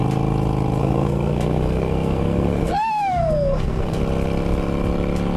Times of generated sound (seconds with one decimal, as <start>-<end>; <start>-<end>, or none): 0.8-4.0